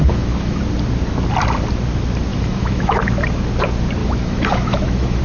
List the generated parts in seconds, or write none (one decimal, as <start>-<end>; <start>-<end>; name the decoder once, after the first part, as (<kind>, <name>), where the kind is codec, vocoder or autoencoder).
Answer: 0.0-0.6 (autoencoder, DAC-VAE); 2.3-3.0; 4.0-5.2